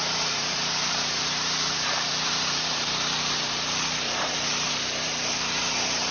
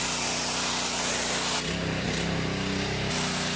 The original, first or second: second